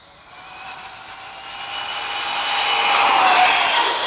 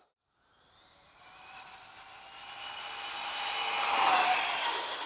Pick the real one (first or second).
first